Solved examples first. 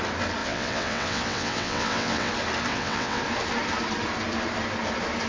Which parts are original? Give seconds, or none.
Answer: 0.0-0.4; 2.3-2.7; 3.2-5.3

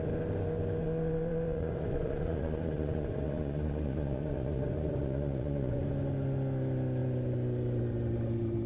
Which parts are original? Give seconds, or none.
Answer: 0.0-0.8; 5.8-8.7

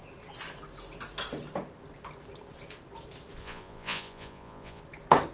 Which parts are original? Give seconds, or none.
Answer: 0.0-3.4; 4.8-5.3

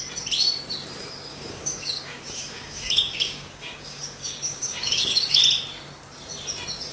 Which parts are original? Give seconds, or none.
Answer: 0.0-1.3; 5.4-6.9

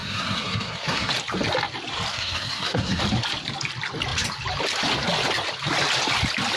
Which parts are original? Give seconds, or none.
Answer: 1.1-2.1; 3.0-6.6

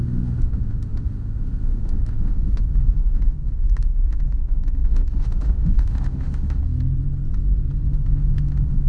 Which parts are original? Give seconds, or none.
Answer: 6.6-7.9